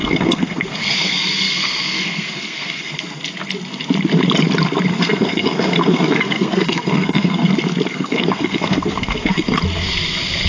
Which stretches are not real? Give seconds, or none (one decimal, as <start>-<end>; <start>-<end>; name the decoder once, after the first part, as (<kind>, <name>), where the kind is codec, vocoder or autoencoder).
0.0-2.9 (codec, SNAC); 4.9-7.5; 7.9-9.6